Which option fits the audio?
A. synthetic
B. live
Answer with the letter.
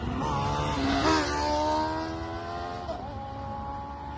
B